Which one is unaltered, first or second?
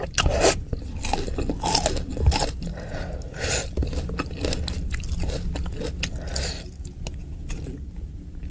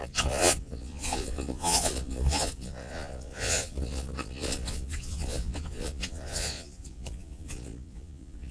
first